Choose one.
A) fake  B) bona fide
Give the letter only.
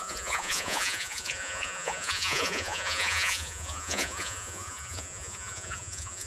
A